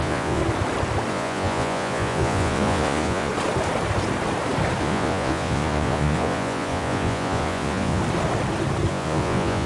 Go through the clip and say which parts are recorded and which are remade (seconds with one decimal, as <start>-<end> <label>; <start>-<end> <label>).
0.0-0.4 remade; 0.4-1.1 recorded; 1.1-3.3 remade; 3.3-4.8 recorded; 4.8-8.0 remade; 8.0-8.9 recorded; 8.9-9.7 remade